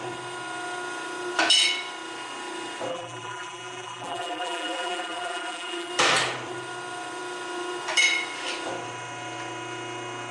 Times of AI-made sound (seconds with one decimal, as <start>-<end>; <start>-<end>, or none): 2.9-5.9